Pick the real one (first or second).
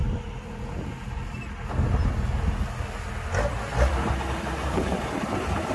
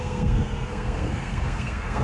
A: first